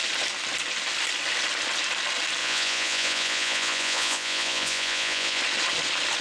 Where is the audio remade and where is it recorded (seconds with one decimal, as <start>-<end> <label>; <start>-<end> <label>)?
0.0-2.4 recorded; 2.4-5.4 remade; 5.4-6.2 recorded